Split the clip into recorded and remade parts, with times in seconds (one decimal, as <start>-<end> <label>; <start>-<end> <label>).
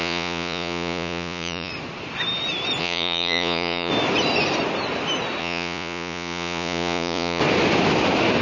0.0-1.7 remade; 1.7-2.8 recorded; 2.8-3.9 remade; 3.9-5.4 recorded; 5.4-7.4 remade; 7.4-8.4 recorded